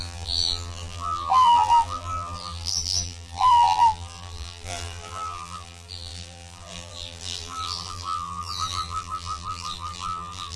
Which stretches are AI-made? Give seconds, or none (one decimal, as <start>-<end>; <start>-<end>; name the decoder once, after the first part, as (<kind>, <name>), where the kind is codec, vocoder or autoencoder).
0.0-10.6 (vocoder, BigVGAN v2)